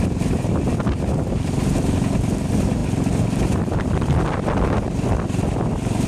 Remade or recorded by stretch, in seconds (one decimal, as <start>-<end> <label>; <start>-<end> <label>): 0.0-6.1 recorded